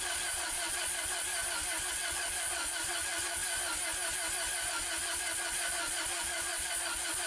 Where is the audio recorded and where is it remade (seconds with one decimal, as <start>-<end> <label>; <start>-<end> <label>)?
0.0-1.3 remade; 1.3-1.9 recorded; 1.9-3.4 remade; 3.4-4.7 recorded; 4.7-7.3 remade